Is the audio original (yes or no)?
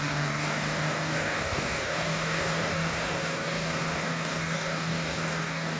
no